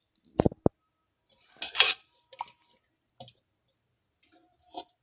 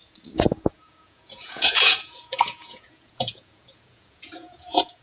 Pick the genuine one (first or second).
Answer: first